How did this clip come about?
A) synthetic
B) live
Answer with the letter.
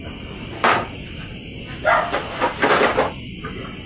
B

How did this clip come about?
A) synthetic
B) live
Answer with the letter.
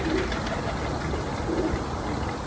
B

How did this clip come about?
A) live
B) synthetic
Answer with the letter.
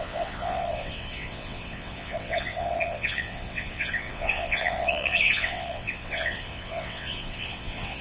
B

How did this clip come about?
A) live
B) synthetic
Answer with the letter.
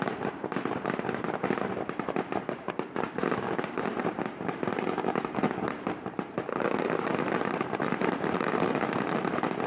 B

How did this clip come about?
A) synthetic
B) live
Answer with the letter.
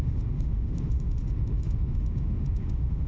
A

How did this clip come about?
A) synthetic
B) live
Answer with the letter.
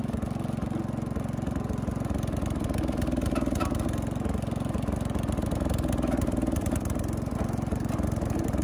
B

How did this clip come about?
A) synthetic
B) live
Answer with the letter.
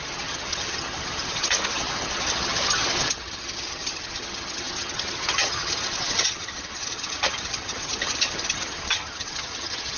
A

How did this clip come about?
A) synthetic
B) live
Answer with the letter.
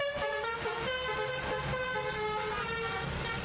B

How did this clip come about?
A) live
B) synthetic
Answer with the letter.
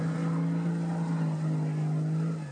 A